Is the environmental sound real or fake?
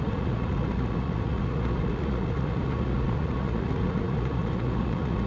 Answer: fake